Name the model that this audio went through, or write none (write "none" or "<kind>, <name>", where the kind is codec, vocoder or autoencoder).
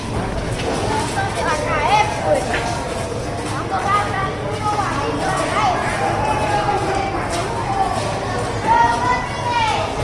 none